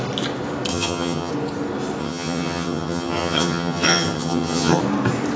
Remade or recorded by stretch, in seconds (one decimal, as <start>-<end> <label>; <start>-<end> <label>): 0.0-0.7 recorded; 0.7-1.3 remade; 1.3-2.0 recorded; 2.0-4.8 remade; 4.8-5.4 recorded